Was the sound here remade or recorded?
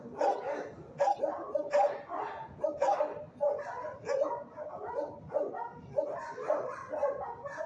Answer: recorded